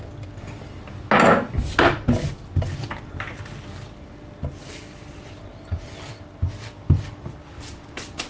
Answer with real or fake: real